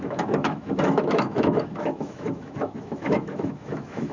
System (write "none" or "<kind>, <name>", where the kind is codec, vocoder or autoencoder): autoencoder, DAC-VAE